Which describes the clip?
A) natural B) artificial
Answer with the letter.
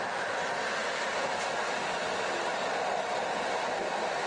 A